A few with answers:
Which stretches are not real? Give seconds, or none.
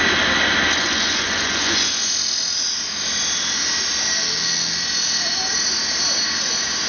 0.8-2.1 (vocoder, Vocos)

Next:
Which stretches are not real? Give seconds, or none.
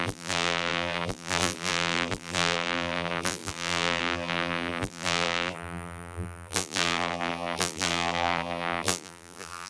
0.0-9.7 (vocoder, BigVGAN v2)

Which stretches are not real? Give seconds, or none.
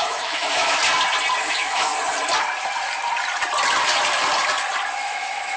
0.0-0.8 (autoencoder, DAC-VAE); 1.4-1.9; 5.0-5.6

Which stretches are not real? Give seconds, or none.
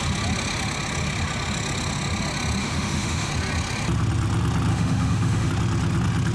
2.6-3.3 (autoencoder, DAC-VAE); 4.7-5.5